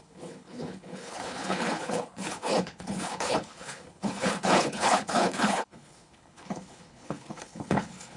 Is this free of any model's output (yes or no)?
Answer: no